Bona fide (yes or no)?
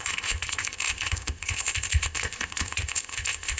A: no